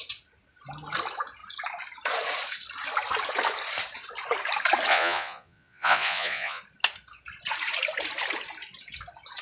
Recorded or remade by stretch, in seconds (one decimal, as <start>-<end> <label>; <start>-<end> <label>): 0.0-4.9 recorded; 4.9-6.6 remade; 6.6-9.4 recorded